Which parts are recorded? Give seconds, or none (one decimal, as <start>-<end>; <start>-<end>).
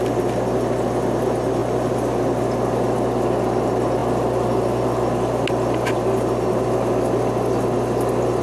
0.0-8.4